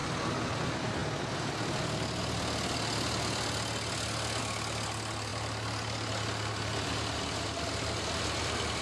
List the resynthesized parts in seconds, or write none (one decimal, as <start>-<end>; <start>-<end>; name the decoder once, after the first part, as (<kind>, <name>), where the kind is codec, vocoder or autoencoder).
none